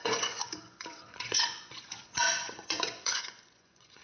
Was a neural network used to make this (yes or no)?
yes